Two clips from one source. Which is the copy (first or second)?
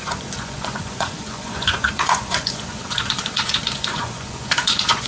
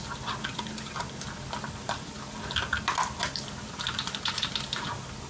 first